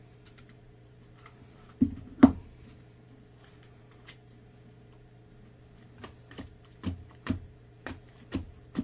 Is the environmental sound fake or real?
fake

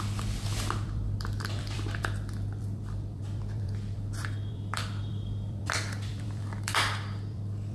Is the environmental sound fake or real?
fake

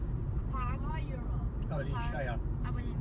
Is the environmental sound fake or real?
fake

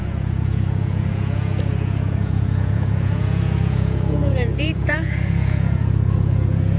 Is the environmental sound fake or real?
fake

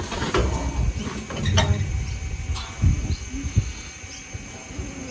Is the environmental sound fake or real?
real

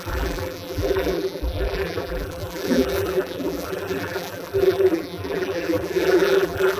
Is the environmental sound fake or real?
fake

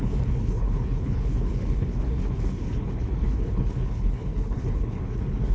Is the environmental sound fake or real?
fake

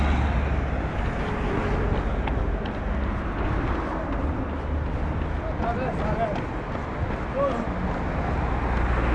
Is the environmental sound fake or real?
real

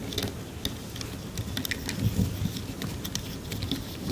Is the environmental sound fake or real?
real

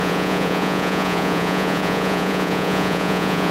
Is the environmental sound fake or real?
fake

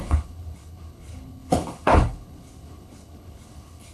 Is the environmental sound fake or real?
fake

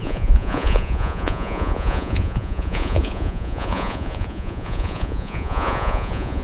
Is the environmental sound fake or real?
fake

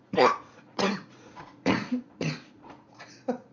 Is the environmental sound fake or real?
fake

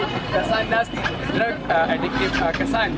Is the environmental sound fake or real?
real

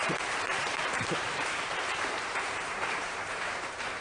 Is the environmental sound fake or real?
fake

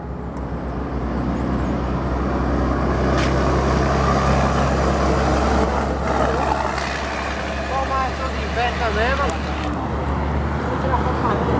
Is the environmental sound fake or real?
real